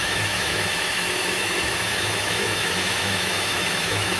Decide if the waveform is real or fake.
fake